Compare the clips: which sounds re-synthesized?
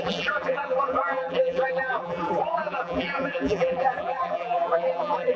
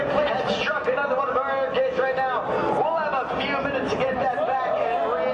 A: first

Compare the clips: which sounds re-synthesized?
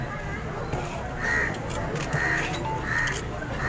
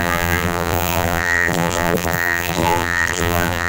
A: second